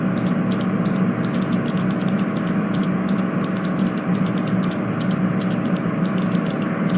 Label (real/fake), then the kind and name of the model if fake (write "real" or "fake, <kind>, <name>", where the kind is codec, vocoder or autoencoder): real